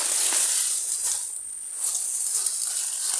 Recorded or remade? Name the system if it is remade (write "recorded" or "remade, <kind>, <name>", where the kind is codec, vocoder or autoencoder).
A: recorded